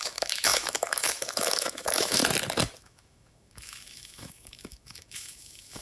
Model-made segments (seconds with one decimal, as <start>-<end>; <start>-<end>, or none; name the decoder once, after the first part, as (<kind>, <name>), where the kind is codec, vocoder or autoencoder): 0.0-2.2 (autoencoder, DAC-VAE); 2.8-5.8